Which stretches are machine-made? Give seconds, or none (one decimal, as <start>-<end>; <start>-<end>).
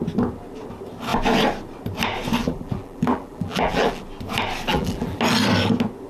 2.4-4.0; 4.7-5.2